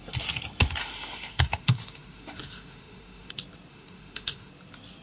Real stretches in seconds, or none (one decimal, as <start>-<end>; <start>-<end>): 0.0-0.8; 3.3-3.7; 4.5-5.0